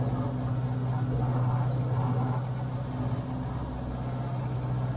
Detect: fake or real real